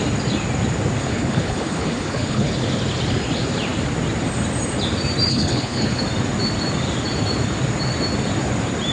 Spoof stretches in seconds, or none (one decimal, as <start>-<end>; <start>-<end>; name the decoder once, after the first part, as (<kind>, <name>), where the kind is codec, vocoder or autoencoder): 1.0-2.5 (codec, HILCodec); 5.3-6.0